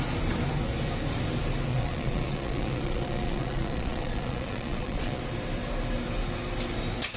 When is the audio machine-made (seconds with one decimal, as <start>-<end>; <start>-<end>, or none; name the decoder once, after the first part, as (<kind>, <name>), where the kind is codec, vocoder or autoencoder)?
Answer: 1.7-5.2 (vocoder, Vocos)